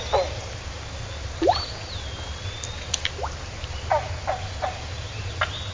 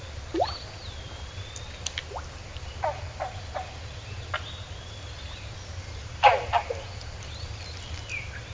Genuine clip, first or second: first